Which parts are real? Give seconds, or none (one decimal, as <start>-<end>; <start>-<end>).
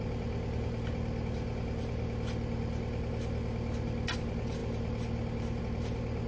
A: 0.0-6.3